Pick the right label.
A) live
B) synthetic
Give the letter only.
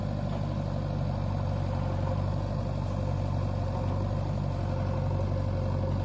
A